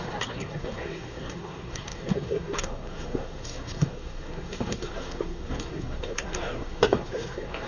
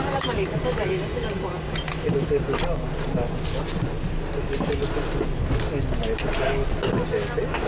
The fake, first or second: first